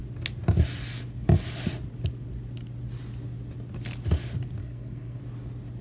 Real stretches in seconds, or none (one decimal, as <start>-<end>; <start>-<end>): 0.0-4.6; 5.2-5.8